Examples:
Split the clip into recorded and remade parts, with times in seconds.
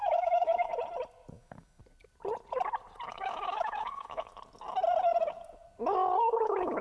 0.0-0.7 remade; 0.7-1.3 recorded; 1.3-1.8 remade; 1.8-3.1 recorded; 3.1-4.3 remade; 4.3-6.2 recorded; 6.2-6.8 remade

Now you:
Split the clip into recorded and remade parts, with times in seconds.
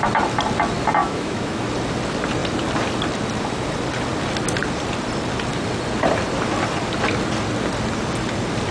0.0-1.0 recorded; 1.0-1.7 remade; 1.7-8.7 recorded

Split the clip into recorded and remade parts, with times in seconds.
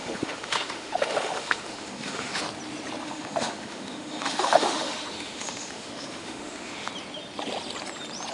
0.0-2.4 remade; 2.4-3.0 recorded; 3.0-6.9 remade; 6.9-8.3 recorded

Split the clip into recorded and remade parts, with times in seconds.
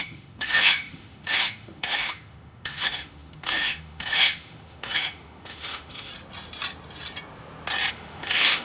0.0-6.1 remade; 6.1-7.9 recorded; 7.9-8.6 remade